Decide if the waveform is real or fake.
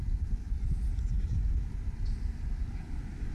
real